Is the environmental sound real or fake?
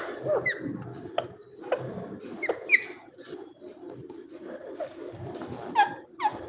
real